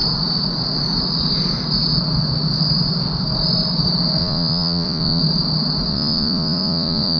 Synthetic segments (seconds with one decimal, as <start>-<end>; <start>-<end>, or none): 4.2-5.2; 5.9-7.2